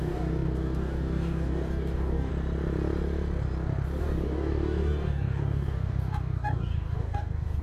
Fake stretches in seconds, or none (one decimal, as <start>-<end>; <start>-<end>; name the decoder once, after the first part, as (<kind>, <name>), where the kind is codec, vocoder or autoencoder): 0.0-2.3 (codec, DAC); 4.0-7.6